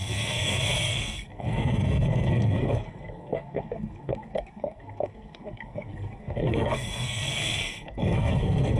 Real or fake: fake